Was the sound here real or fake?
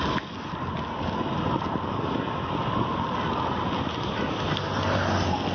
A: real